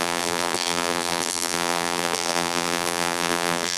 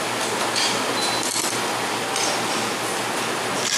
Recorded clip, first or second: second